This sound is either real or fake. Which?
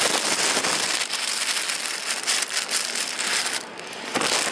real